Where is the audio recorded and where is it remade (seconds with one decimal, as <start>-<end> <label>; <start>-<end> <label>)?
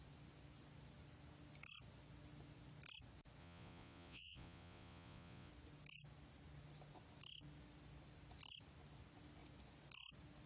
0.0-3.4 recorded; 3.4-5.5 remade; 5.5-10.5 recorded